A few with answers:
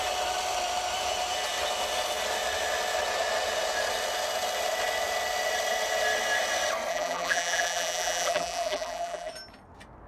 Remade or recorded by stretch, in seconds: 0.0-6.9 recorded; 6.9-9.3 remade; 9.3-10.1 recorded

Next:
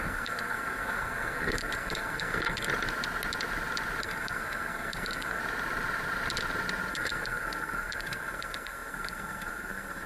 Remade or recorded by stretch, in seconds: 0.0-2.7 remade; 2.7-4.0 recorded; 4.0-5.4 remade; 5.4-6.9 recorded; 6.9-10.1 remade

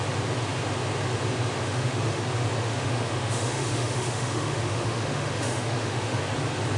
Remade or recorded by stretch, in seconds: 0.0-1.6 recorded; 1.6-2.2 remade; 2.2-2.6 recorded; 2.6-6.2 remade; 6.2-6.8 recorded